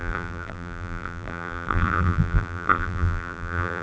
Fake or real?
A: fake